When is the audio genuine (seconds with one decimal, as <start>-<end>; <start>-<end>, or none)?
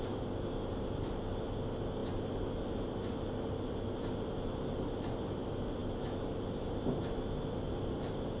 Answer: 0.0-8.4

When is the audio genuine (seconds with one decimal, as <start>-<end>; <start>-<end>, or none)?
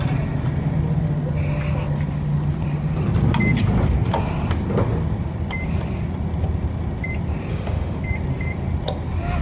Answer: 0.0-7.5; 8.0-9.4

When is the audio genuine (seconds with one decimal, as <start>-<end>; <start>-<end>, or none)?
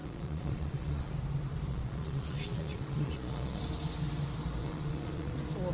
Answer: 1.1-1.7; 3.6-4.6; 5.3-5.7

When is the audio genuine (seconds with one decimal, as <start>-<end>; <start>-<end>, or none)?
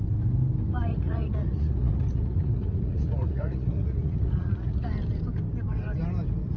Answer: 0.0-0.9; 4.9-6.6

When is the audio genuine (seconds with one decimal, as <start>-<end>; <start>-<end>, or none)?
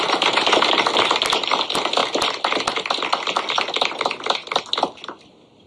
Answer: 0.0-2.0; 3.5-5.7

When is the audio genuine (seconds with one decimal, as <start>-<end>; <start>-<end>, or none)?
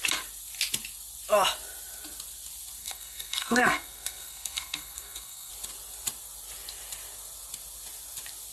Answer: 0.0-2.8; 5.5-8.5